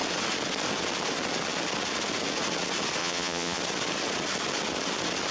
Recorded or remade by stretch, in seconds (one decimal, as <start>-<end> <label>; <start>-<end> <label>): 0.0-3.0 recorded; 3.0-3.6 remade; 3.6-5.3 recorded